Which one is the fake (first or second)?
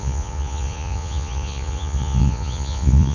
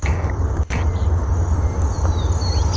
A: first